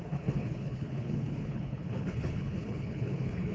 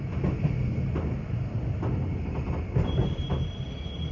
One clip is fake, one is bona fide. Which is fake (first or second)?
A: first